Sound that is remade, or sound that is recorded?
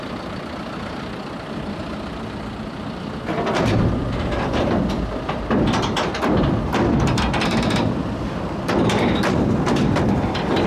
remade